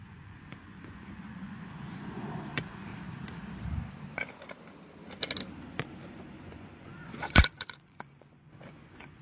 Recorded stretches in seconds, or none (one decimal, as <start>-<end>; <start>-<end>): 2.9-5.6